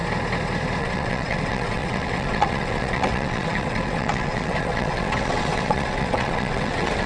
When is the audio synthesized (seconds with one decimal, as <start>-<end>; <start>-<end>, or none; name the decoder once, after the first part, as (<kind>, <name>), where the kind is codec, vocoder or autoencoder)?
0.8-7.1 (vocoder, WaveNeXt)